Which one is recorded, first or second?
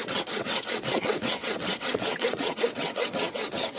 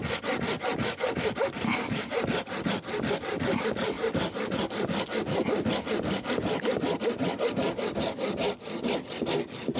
second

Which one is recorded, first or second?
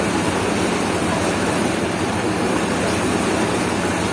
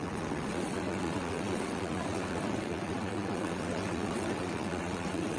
first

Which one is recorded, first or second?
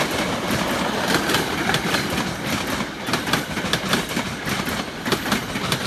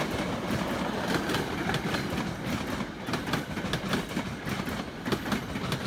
second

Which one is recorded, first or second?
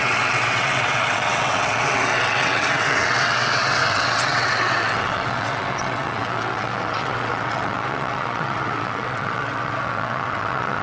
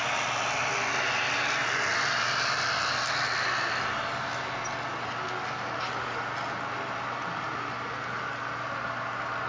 second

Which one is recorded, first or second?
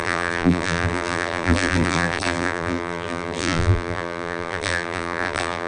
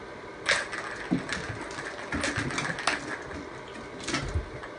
second